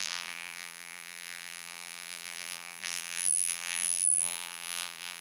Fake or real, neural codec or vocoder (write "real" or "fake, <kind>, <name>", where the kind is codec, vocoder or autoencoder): fake, vocoder, BigVGAN v2